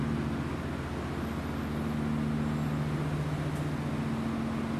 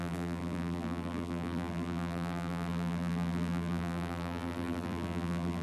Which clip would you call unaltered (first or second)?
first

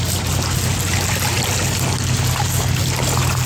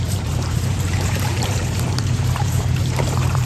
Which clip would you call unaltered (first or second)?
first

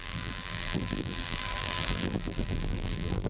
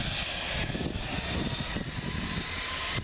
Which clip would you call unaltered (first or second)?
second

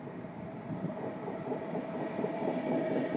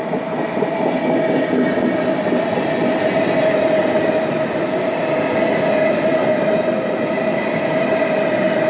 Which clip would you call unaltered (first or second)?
second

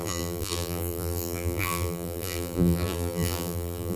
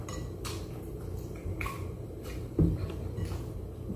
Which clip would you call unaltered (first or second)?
second